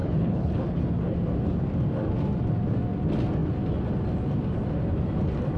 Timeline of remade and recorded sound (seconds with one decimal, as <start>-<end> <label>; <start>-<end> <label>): 0.0-0.8 remade; 0.8-5.6 recorded